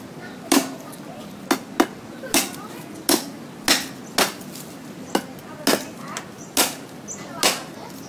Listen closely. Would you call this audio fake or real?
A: real